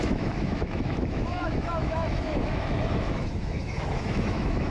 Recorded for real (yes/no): no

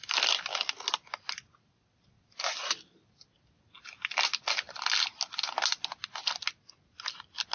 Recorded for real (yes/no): yes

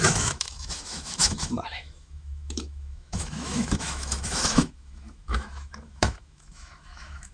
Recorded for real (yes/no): no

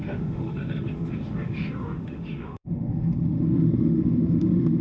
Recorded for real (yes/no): no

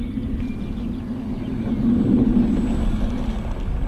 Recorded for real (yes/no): yes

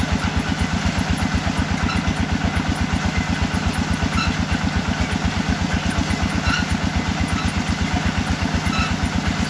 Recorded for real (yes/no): yes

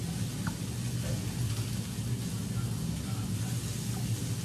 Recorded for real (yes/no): yes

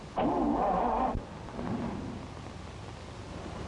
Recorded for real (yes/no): yes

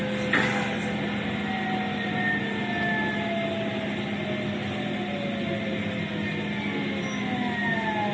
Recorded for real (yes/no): yes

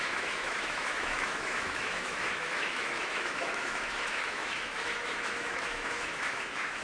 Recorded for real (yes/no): no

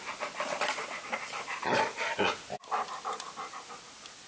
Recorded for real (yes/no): yes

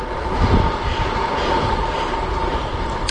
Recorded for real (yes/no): yes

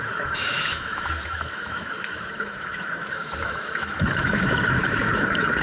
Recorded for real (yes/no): no